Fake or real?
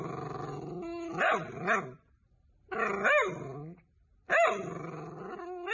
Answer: real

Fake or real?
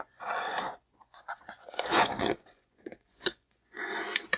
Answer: fake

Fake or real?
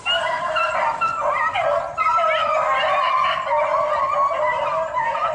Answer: real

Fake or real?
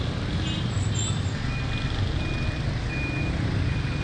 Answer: real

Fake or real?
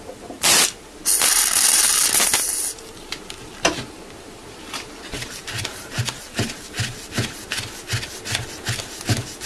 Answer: real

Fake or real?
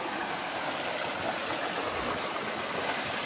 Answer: real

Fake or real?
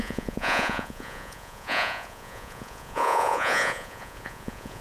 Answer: fake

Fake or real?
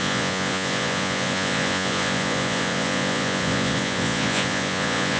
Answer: fake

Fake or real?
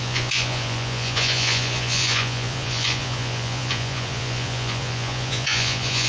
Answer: fake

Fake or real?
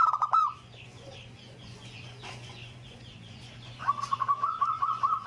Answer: fake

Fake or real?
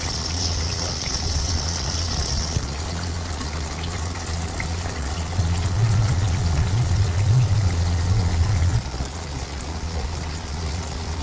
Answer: fake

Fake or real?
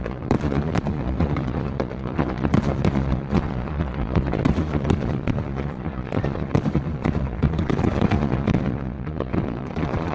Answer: fake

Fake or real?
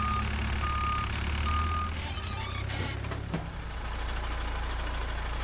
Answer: real